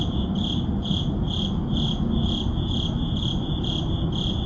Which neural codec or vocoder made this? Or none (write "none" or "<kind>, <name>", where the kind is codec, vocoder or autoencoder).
none